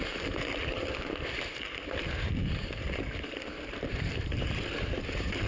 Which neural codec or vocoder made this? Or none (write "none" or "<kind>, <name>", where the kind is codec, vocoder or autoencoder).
vocoder, BigVGAN v2